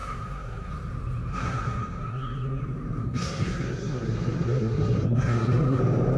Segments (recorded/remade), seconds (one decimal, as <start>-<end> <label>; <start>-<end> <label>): 0.0-0.7 remade; 0.7-1.3 recorded; 1.3-2.6 remade; 2.6-3.0 recorded; 3.0-5.8 remade; 5.8-6.2 recorded